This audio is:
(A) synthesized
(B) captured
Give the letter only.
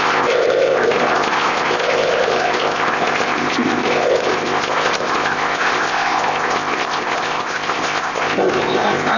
A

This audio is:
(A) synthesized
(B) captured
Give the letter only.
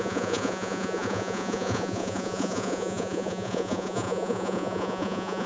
A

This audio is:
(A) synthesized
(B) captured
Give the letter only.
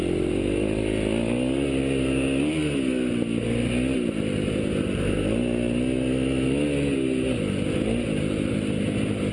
B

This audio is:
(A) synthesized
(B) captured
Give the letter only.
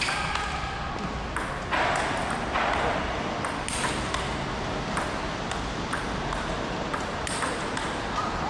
B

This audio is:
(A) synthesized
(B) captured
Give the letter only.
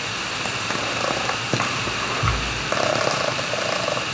B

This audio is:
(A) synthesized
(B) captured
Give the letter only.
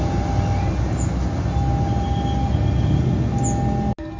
B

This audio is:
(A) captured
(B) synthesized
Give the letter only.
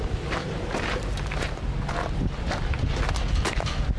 A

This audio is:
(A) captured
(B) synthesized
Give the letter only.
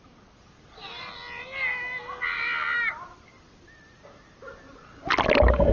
A